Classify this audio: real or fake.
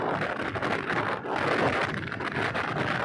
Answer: real